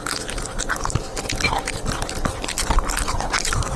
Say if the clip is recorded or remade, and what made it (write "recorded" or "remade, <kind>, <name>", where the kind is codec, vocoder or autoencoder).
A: recorded